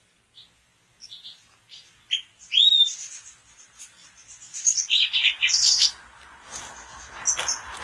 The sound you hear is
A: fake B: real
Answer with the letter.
B